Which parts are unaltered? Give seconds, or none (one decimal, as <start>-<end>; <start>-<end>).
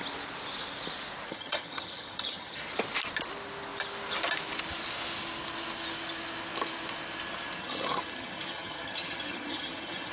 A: 0.0-1.3; 2.6-7.6